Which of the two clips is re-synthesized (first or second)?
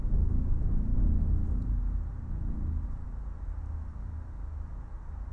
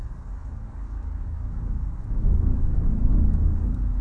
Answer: second